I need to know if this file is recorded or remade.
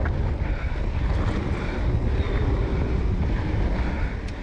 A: recorded